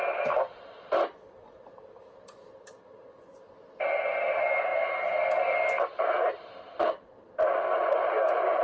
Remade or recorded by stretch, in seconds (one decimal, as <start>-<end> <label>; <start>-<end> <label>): 0.0-8.6 recorded

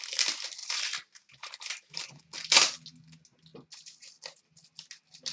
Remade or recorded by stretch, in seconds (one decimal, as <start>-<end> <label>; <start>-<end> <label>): 0.0-0.6 recorded; 0.6-2.2 remade; 2.2-5.3 recorded

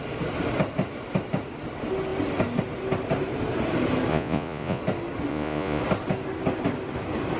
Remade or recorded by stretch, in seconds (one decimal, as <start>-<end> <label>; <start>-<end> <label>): 0.0-4.1 recorded; 4.1-4.8 remade; 4.8-5.3 recorded; 5.3-5.8 remade; 5.8-7.4 recorded

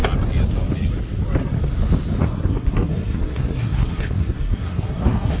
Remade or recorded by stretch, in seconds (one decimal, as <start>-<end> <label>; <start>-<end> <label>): 0.0-2.2 recorded; 2.2-5.4 remade

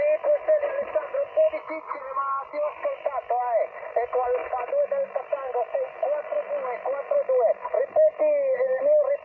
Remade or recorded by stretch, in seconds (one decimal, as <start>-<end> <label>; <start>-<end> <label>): 0.0-9.2 recorded

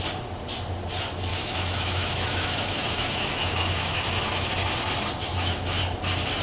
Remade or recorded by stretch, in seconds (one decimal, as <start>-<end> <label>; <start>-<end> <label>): 0.0-1.3 recorded; 1.3-4.5 remade; 4.5-5.3 recorded; 5.3-5.8 remade; 5.8-6.4 recorded